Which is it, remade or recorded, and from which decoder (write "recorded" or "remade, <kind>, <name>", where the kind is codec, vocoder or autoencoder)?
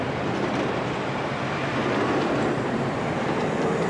recorded